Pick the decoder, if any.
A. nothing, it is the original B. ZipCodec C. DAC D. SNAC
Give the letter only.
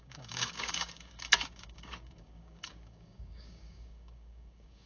C